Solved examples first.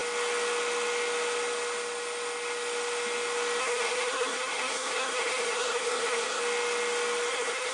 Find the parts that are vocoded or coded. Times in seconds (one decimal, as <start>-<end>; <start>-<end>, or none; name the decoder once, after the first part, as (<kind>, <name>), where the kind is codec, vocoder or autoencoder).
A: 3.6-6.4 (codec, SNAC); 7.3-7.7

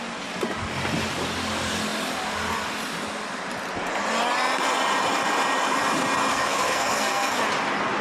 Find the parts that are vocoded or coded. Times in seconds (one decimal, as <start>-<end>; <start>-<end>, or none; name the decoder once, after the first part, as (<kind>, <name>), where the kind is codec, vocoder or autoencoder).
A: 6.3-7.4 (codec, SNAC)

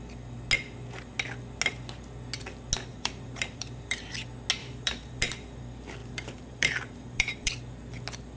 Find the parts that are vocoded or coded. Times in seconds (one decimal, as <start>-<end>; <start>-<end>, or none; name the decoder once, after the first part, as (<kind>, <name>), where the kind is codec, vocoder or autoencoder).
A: 2.9-4.1 (vocoder, BigVGAN v2); 4.6-5.6; 6.0-7.5

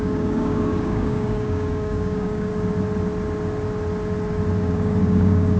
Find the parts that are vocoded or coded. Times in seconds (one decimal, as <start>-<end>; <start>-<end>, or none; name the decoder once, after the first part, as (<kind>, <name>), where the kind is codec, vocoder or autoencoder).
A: 0.0-2.5 (codec, DAC); 4.6-5.6

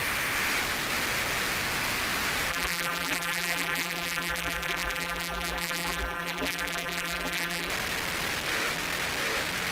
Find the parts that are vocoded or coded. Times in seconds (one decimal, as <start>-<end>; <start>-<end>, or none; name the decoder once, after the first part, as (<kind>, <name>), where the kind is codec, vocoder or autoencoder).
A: 2.5-7.7 (vocoder, BigVGAN v2)

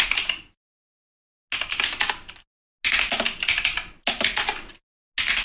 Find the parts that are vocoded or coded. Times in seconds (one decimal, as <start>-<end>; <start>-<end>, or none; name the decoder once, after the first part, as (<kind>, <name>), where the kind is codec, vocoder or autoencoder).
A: none

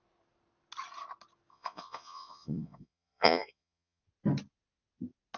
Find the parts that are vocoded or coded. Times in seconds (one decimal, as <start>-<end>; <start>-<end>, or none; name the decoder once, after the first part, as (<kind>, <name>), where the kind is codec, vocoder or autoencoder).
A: 1.5-4.0 (vocoder, Vocos)

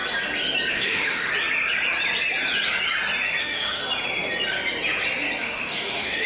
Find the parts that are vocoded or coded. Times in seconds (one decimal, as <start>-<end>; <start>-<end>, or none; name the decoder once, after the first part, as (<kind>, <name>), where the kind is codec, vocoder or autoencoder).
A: 0.7-1.3 (autoencoder, DAC-VAE); 3.4-3.8; 5.4-6.3